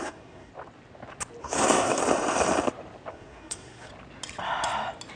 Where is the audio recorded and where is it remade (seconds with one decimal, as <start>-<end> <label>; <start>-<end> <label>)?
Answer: 0.0-0.5 remade; 0.5-1.4 recorded; 1.4-2.0 remade; 2.0-3.1 recorded; 3.1-3.9 remade; 3.9-5.2 recorded